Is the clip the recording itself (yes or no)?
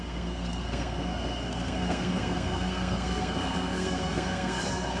no